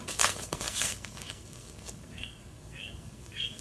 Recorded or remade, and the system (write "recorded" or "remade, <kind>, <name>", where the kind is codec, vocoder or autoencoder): remade, codec, SNAC